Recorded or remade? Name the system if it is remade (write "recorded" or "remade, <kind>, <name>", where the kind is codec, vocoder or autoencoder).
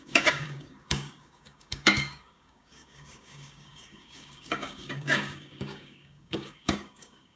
remade, codec, DAC